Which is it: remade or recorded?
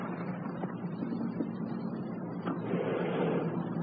recorded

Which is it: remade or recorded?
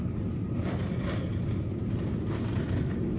recorded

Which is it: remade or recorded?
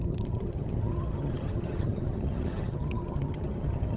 remade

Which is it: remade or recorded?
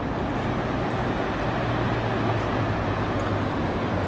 recorded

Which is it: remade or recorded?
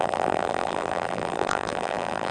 remade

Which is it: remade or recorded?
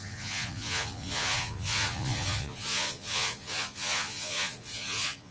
remade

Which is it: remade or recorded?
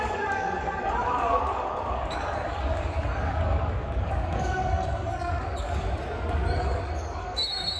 remade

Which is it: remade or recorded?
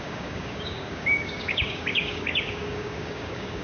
remade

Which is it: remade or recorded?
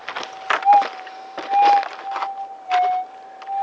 recorded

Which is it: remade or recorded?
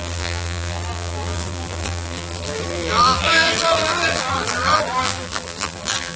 remade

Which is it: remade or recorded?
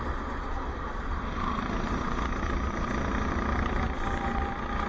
recorded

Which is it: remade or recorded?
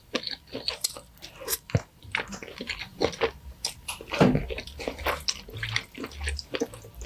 recorded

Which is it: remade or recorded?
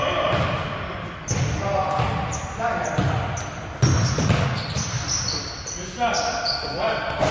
recorded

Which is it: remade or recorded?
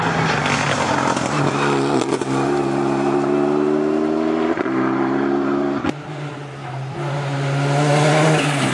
recorded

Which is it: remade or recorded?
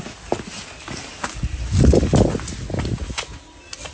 recorded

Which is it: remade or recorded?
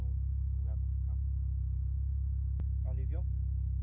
recorded